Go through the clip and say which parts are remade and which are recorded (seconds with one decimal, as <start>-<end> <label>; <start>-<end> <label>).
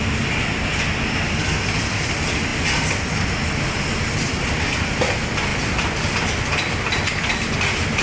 0.0-8.0 recorded